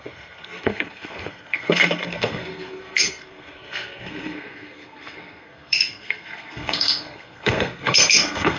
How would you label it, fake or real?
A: fake